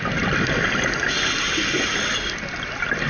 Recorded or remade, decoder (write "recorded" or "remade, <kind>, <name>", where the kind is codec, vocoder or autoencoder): recorded